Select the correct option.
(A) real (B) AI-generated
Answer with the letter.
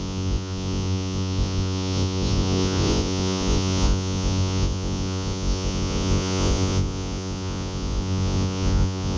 B